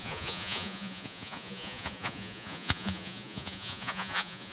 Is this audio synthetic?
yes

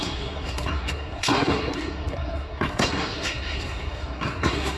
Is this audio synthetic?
yes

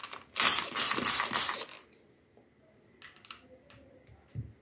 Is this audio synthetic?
no